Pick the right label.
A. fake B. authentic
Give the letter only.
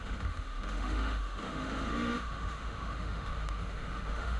A